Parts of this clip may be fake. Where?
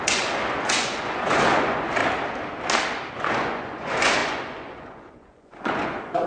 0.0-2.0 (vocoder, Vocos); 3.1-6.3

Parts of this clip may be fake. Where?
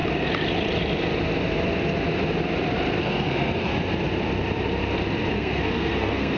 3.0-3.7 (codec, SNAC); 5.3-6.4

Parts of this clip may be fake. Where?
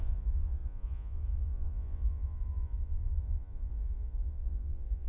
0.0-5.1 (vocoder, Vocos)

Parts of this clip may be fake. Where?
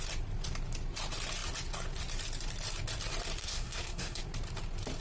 3.4-4.2 (codec, SNAC)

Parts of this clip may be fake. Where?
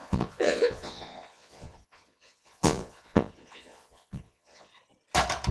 0.0-4.7 (vocoder, Vocos)